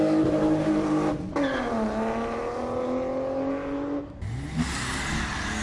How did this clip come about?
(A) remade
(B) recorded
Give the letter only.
B